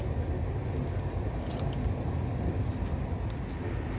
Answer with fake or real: real